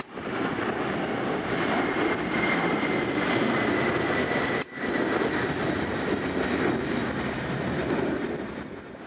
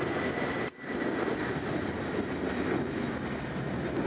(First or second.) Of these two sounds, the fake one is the first